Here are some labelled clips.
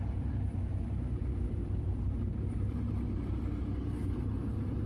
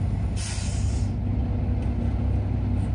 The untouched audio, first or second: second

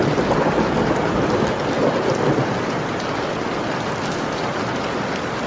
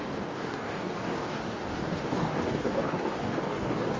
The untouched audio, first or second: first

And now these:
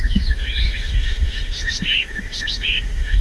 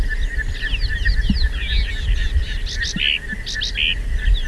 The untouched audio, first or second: second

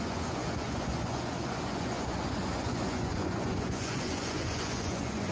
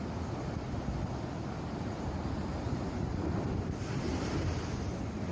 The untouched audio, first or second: second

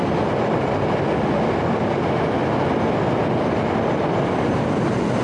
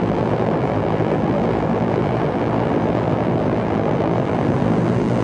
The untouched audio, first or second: first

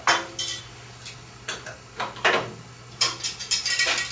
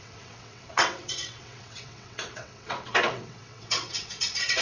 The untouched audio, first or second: first